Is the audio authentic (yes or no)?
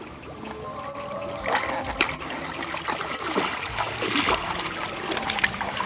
yes